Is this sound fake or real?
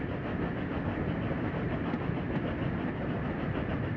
real